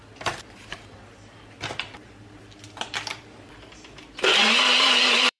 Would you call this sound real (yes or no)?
no